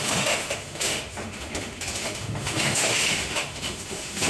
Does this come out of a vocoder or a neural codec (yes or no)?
yes